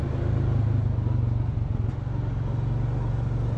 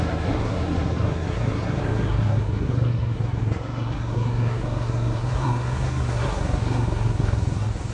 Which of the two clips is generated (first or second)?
second